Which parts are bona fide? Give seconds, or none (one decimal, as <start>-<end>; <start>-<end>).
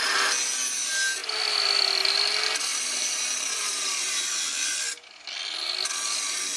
0.0-1.2; 1.8-2.7; 5.2-6.6